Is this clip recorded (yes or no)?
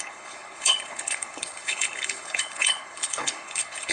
no